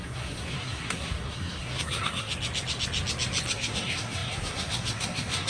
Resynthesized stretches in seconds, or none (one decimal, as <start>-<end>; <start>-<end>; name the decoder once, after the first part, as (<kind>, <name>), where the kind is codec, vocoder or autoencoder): 0.0-2.3 (codec, SNAC); 3.5-5.5

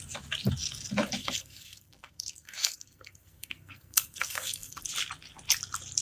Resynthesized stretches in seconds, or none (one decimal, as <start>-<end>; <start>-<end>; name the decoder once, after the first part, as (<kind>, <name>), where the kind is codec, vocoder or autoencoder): 1.2-4.8 (codec, SNAC)

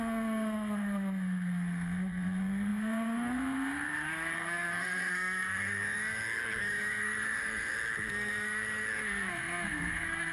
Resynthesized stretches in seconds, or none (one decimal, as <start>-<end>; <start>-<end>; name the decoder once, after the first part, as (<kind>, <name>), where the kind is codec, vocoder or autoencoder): 0.0-10.3 (codec, SNAC)

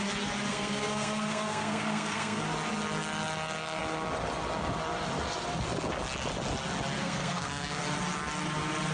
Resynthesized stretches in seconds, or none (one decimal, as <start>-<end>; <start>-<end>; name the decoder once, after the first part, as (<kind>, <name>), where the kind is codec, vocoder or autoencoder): 0.5-2.4 (codec, SNAC); 7.0-7.8

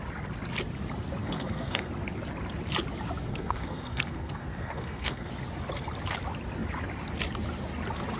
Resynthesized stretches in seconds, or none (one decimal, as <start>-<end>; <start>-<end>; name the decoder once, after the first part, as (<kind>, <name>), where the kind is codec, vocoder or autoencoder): 1.2-1.9 (codec, SNAC); 3.3-5.3